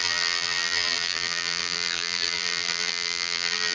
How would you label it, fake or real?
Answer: fake